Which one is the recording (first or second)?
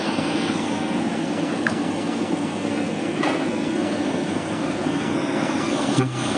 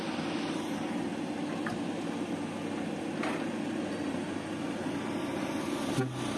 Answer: second